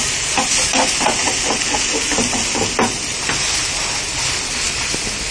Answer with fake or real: real